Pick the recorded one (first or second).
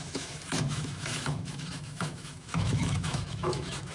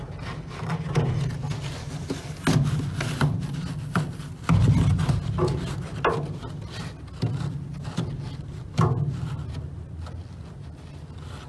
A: second